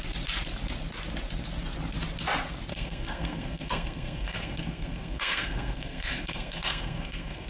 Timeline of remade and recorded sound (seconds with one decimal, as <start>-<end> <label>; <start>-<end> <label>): 0.0-2.7 recorded; 2.7-7.5 remade